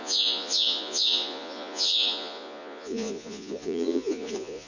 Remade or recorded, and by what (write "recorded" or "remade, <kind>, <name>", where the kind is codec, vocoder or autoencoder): remade, vocoder, Vocos